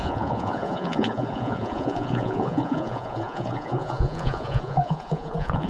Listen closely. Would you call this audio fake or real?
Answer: fake